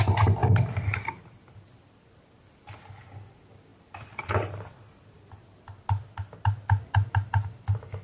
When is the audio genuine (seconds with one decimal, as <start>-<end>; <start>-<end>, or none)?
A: 0.0-8.0